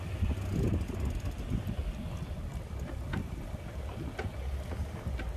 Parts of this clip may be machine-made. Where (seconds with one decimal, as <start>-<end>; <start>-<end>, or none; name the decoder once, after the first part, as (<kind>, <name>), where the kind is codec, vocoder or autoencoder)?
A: none